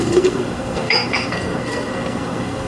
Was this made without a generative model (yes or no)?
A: no